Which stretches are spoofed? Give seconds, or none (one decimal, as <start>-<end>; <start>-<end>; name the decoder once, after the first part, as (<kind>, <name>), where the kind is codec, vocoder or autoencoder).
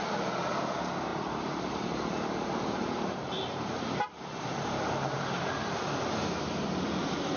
1.1-5.5 (vocoder, BigVGAN v2)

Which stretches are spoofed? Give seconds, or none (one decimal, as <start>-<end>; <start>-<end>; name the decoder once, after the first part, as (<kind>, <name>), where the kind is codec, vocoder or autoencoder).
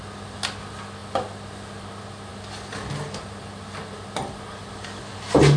2.3-5.0 (vocoder, BigVGAN v2)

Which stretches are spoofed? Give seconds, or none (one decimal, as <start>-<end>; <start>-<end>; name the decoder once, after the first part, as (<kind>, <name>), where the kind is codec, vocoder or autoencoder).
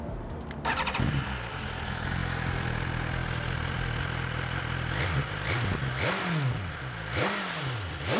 none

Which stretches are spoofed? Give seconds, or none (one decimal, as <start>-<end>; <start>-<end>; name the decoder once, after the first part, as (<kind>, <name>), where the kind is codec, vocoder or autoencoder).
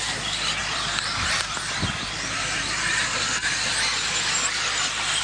0.6-3.7 (vocoder, BigVGAN v2)